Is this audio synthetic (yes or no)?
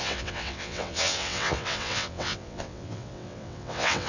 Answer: yes